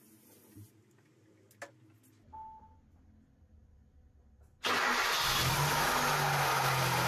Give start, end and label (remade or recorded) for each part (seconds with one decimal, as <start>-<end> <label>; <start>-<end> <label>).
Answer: 0.0-7.1 recorded